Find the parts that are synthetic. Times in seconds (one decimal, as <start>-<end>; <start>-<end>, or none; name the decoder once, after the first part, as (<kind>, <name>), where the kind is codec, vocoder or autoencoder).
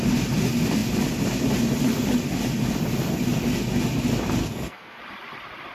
4.4-5.0 (codec, SNAC)